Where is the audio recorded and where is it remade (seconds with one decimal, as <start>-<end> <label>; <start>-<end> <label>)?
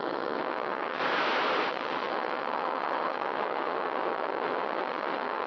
0.0-1.0 remade; 1.0-1.7 recorded; 1.7-5.5 remade